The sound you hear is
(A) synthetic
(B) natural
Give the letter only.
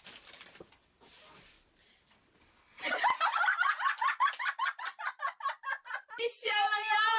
B